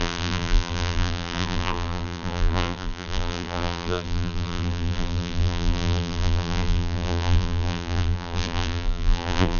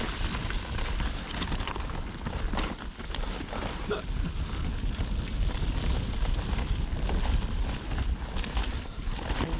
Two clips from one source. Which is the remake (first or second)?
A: first